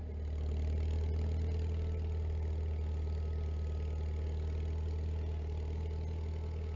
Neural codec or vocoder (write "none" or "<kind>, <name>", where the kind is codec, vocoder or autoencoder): none